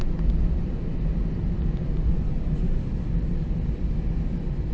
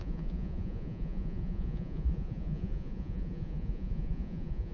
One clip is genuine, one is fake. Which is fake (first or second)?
second